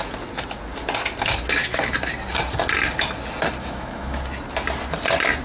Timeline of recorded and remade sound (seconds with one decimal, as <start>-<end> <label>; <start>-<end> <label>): 0.0-3.6 recorded; 3.6-4.2 remade; 4.2-5.4 recorded